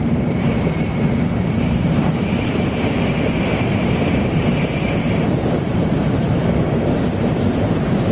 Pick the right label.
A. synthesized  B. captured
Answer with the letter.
A